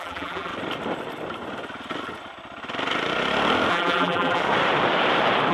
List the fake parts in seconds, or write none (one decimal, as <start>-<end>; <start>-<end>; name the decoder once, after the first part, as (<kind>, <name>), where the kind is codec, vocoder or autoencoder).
0.0-0.5 (vocoder, BigVGAN v2); 3.7-4.4